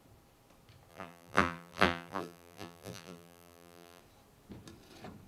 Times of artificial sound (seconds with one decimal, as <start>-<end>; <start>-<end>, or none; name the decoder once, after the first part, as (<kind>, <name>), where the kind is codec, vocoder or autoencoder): 0.9-4.0 (vocoder, BigVGAN v2)